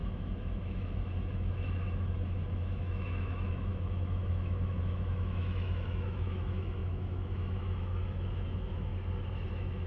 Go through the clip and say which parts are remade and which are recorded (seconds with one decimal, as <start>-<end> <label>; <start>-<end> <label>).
0.0-8.9 remade; 8.9-9.5 recorded; 9.5-9.9 remade